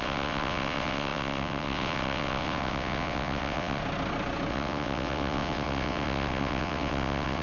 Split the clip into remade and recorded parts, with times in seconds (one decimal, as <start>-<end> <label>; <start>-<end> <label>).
0.0-3.8 remade; 3.8-4.5 recorded; 4.5-7.4 remade